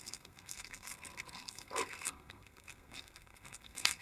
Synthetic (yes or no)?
yes